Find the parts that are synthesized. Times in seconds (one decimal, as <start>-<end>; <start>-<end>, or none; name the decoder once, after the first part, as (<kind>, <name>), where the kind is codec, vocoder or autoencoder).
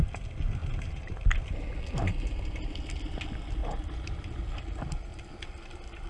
3.6-4.5 (vocoder, BigVGAN v2); 5.1-6.1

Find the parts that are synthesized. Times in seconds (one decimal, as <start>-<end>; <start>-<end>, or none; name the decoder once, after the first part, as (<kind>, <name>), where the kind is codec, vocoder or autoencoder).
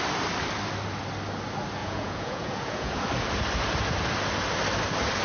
1.8-3.0 (vocoder, Vocos)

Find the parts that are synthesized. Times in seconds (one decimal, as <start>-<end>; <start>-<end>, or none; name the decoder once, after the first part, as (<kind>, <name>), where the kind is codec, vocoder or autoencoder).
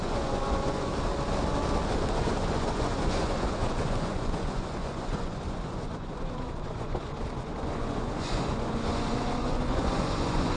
0.0-0.9 (vocoder, Vocos); 2.1-10.6